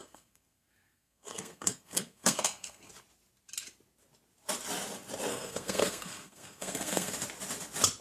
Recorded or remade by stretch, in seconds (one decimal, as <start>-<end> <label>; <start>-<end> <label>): 0.0-2.9 remade; 2.9-5.3 recorded; 5.3-7.1 remade; 7.1-8.0 recorded